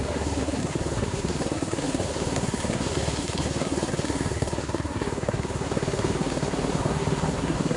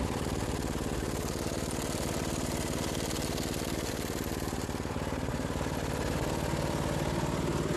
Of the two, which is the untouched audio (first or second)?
second